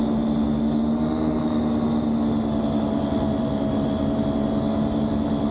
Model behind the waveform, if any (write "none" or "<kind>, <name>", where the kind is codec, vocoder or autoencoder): none